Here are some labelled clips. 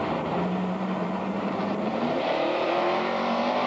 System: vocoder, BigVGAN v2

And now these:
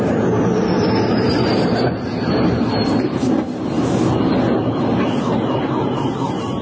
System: none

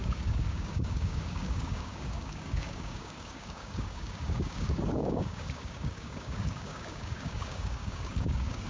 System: codec, DAC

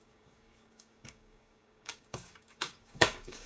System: codec, DAC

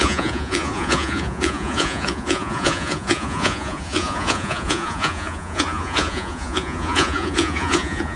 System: vocoder, Vocos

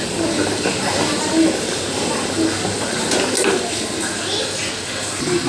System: none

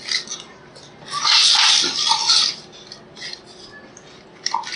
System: none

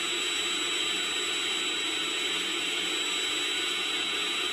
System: none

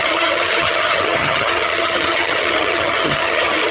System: vocoder, HiFi-GAN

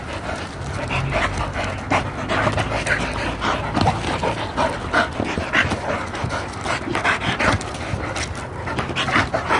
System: none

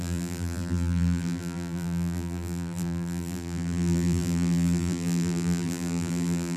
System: vocoder, BigVGAN v2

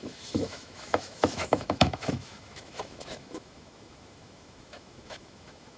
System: autoencoder, DAC-VAE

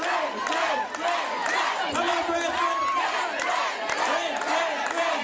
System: none